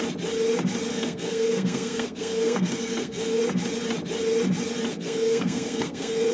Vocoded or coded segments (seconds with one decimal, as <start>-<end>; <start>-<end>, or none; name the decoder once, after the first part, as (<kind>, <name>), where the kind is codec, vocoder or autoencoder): 0.9-3.4 (codec, SNAC); 4.9-6.3